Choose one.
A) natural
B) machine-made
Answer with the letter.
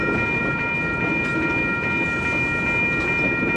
A